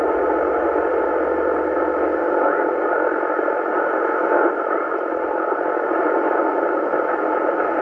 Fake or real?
real